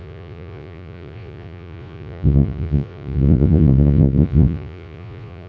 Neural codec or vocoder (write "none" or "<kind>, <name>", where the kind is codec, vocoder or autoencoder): vocoder, Vocos